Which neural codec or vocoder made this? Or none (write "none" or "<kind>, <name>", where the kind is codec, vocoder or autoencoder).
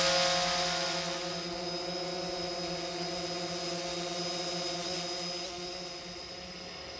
none